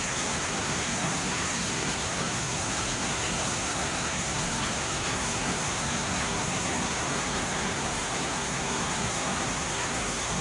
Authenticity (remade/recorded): remade